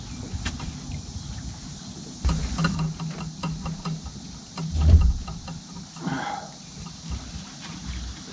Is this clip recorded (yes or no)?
yes